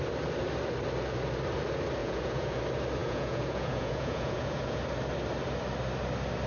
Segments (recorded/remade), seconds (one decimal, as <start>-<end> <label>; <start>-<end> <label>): 0.0-2.0 recorded; 2.0-2.6 remade; 2.6-3.0 recorded; 3.0-4.8 remade; 4.8-6.5 recorded